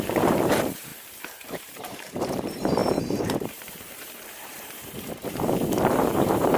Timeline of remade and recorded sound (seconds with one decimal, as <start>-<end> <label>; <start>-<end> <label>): 0.0-6.6 remade